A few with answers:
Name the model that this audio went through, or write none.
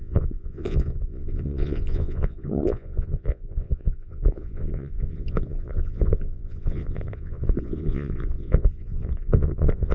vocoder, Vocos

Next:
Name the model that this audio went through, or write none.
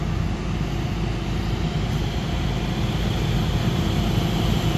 none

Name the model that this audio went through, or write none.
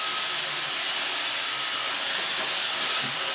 none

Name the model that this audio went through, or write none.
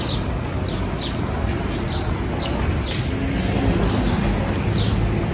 none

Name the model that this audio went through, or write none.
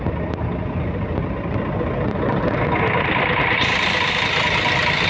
none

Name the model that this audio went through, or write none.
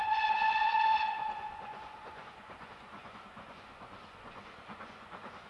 vocoder, Vocos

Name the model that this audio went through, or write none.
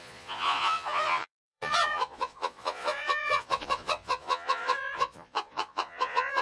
vocoder, Vocos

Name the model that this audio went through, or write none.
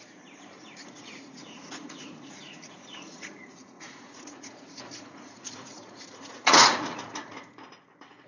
vocoder, Vocos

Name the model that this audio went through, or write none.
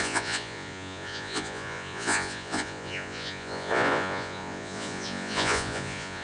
vocoder, Vocos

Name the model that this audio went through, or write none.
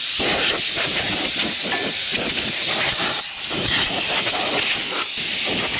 none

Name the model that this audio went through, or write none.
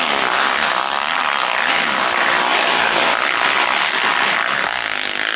none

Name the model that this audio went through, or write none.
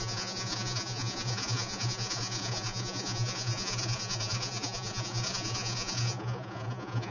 vocoder, Vocos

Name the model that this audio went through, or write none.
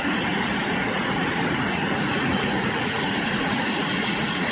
vocoder, Vocos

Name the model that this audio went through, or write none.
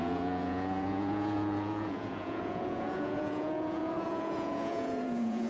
vocoder, Vocos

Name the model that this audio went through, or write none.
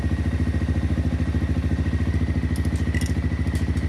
none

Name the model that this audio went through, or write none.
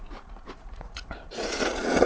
vocoder, Vocos